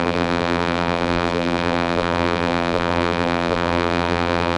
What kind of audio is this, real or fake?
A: fake